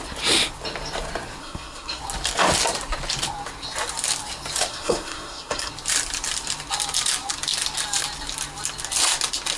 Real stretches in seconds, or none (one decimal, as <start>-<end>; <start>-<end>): 0.0-1.4; 2.0-4.7; 5.7-9.6